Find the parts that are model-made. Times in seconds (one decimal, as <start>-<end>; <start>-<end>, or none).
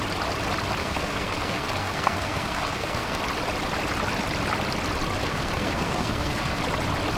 0.8-3.2; 5.2-6.6